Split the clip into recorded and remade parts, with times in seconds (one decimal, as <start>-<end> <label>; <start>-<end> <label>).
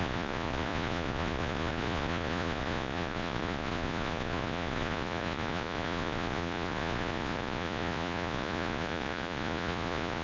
0.0-10.2 remade